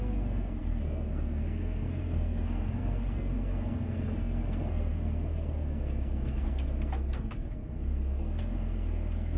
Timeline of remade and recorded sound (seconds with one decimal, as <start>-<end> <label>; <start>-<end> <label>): 0.0-9.4 remade